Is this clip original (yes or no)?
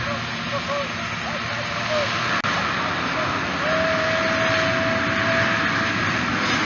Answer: yes